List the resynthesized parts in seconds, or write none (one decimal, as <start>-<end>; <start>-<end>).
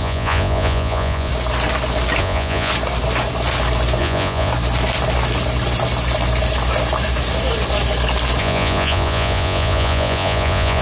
0.0-1.3; 2.2-2.7; 4.0-4.5; 8.4-10.8